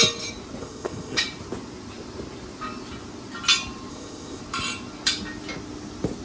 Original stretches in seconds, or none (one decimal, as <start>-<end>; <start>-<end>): 0.0-0.6; 1.2-3.9; 4.4-6.2